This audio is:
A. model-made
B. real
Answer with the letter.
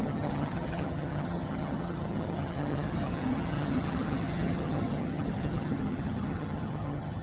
A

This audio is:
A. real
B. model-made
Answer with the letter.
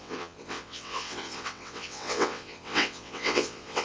B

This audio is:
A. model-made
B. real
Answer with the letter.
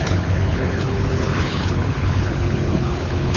A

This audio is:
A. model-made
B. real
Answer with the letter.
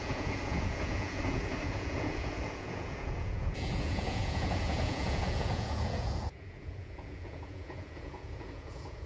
A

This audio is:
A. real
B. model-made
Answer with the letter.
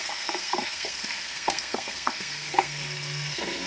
B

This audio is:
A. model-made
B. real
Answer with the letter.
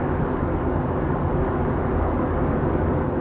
A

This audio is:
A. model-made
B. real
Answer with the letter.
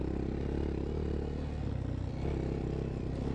B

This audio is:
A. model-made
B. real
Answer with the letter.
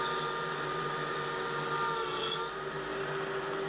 B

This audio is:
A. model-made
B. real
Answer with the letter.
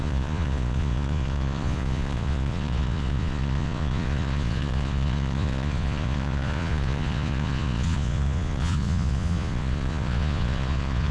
A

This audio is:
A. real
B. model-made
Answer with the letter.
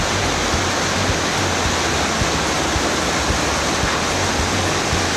A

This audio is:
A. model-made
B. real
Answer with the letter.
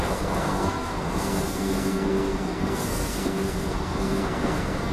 A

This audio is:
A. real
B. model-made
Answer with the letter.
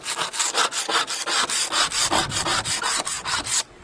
A